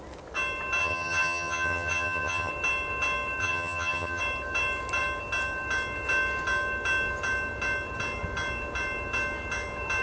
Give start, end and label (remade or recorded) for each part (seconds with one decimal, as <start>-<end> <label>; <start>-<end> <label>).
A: 0.0-0.8 recorded; 0.8-2.5 remade; 2.5-3.4 recorded; 3.4-4.2 remade; 4.2-10.0 recorded